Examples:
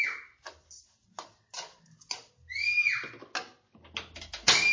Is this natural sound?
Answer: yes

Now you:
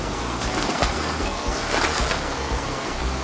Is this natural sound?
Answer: no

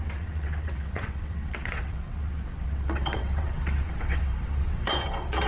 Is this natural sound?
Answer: no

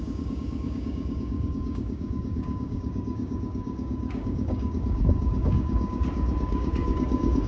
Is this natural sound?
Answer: no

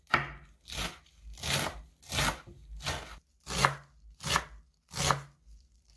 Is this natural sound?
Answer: yes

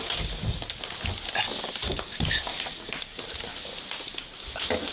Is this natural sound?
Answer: yes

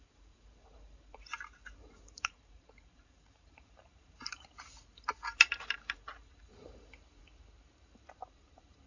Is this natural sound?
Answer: no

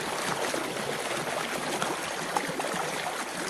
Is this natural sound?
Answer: yes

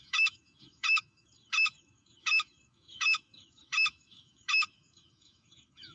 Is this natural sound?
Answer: no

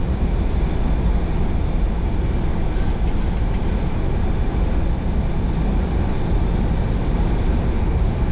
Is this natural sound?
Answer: yes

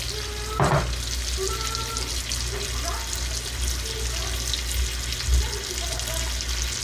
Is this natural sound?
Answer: yes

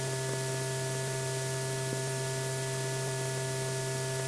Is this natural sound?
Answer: yes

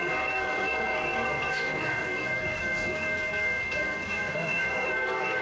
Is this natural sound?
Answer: no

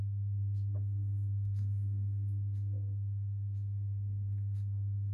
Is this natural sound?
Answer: no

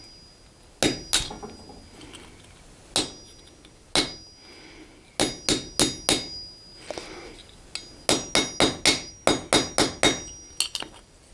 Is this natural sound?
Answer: yes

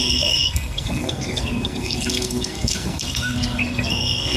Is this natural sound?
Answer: no